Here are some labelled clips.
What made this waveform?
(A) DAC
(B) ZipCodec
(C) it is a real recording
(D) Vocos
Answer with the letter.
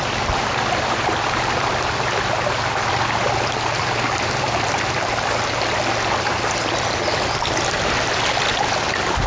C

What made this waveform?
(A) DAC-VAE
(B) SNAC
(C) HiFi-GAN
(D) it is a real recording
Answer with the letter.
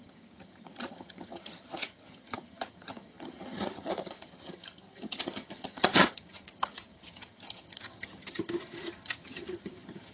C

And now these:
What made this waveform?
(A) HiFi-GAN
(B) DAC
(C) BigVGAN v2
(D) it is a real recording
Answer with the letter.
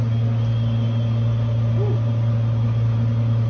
D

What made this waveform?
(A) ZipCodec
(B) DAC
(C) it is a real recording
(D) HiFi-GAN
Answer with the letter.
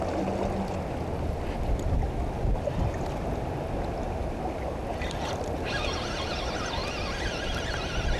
C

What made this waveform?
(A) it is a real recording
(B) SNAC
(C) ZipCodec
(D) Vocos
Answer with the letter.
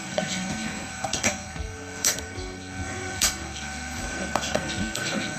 B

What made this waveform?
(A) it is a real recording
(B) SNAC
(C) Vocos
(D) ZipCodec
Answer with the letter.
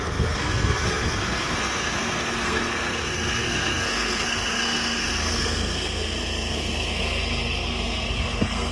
B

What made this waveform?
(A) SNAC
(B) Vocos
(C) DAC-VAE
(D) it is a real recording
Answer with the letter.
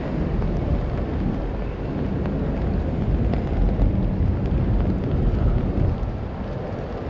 D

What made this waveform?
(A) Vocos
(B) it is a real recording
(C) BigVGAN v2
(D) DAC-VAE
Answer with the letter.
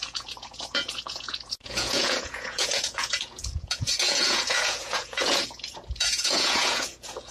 A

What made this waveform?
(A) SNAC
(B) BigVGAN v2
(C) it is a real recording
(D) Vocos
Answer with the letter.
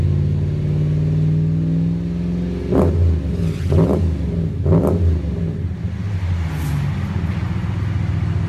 C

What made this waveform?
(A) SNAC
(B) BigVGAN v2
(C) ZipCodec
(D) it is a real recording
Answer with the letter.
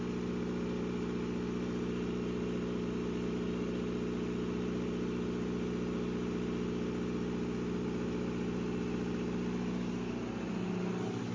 D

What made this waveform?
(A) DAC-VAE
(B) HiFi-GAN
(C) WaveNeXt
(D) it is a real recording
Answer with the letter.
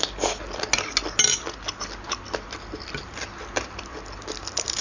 D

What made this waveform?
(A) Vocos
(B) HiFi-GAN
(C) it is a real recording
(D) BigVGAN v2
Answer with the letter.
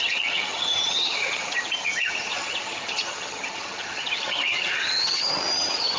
B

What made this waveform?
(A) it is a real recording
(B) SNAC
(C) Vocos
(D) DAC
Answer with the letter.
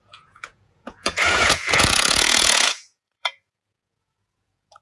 C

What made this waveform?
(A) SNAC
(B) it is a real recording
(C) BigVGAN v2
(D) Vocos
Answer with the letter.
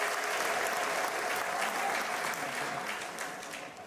B